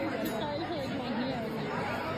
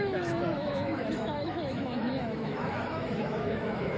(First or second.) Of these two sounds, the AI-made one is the second